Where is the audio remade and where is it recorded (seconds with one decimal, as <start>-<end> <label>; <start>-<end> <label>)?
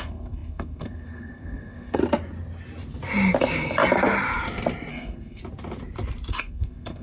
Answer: 0.0-2.0 remade; 2.0-4.9 recorded; 4.9-5.4 remade; 5.4-6.3 recorded; 6.3-7.0 remade